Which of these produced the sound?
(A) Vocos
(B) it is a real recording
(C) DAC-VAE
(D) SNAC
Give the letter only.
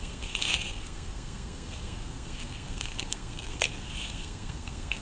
D